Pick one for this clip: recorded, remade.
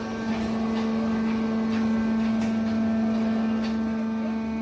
recorded